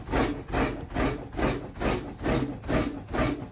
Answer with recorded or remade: recorded